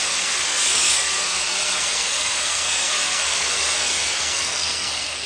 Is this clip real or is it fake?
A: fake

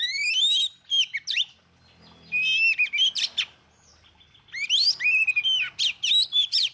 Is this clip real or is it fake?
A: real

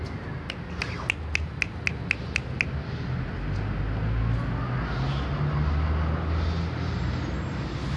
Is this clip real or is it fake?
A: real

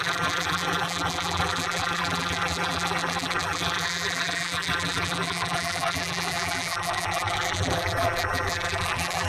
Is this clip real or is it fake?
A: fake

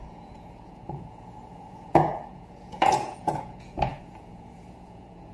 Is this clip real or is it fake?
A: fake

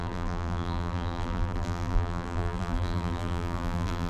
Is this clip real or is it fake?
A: fake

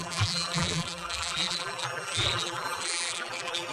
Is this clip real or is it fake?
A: fake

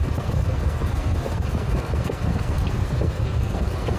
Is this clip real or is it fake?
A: fake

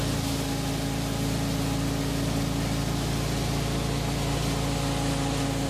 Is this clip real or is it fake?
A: real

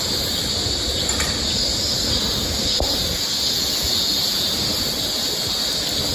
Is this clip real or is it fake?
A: real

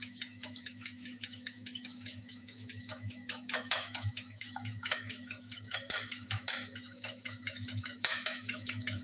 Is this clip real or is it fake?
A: fake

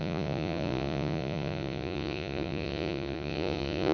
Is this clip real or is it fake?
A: fake